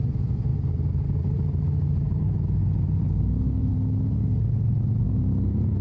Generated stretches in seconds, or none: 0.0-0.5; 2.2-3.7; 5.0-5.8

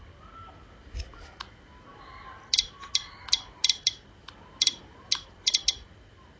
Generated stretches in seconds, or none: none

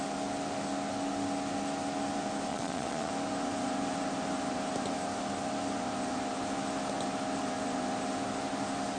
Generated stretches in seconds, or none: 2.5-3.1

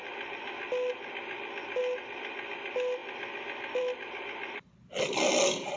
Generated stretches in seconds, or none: none

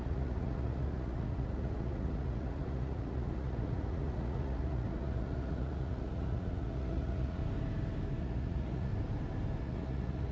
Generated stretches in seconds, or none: 0.0-7.4; 8.2-8.9; 9.6-10.3

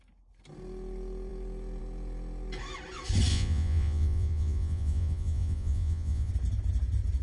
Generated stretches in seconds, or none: 3.3-6.3